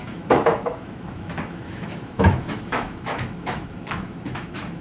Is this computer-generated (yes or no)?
yes